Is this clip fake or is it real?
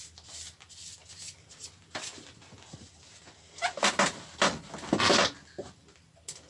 real